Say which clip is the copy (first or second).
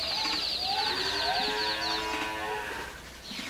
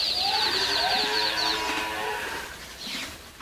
second